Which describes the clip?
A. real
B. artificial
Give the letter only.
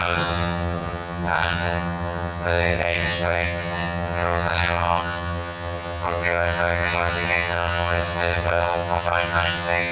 B